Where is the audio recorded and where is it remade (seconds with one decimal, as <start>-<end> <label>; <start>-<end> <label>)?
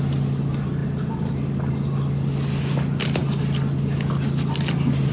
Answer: 0.0-5.1 recorded